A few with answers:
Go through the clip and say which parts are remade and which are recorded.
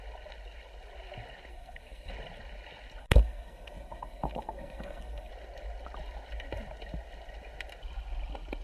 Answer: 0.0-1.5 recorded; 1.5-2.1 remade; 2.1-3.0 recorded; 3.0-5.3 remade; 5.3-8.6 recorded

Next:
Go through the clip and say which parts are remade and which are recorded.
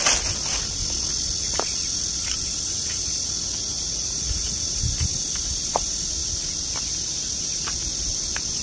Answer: 0.0-3.6 recorded; 3.6-4.7 remade; 4.7-8.6 recorded